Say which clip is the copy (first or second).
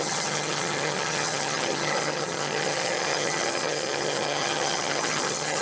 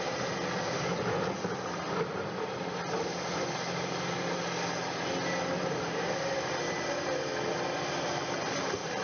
first